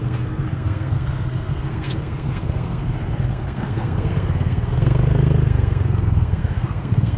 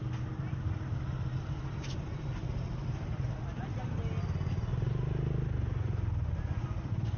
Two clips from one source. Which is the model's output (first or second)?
first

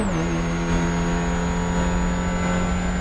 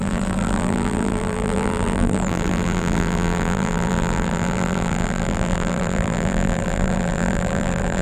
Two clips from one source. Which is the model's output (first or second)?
second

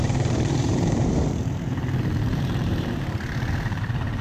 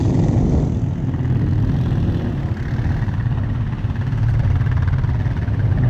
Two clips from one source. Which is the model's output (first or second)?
first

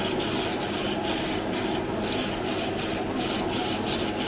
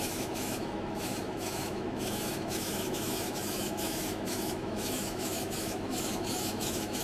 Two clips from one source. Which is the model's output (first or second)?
second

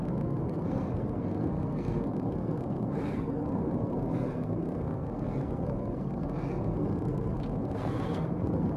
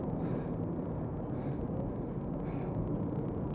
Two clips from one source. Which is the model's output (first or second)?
first